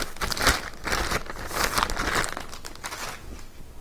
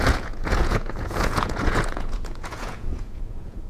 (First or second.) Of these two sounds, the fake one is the second